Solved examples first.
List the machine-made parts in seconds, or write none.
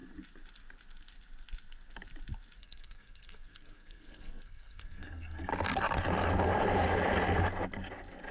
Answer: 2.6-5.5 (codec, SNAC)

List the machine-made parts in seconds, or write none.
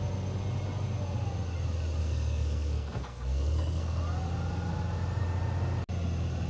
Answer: 2.0-4.0 (codec, SNAC)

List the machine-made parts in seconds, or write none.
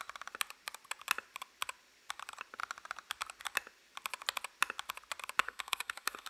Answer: 5.4-6.3 (codec, SNAC)